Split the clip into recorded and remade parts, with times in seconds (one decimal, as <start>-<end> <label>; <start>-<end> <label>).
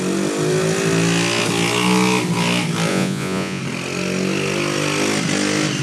0.0-2.9 recorded; 2.9-3.6 remade; 3.6-5.8 recorded